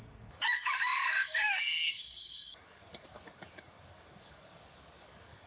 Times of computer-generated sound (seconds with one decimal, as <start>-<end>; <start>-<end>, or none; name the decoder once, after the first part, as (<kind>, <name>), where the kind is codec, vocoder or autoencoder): 0.0-5.5 (codec, DAC)